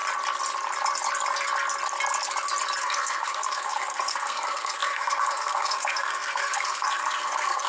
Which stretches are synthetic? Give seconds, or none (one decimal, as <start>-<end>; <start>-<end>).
2.8-7.7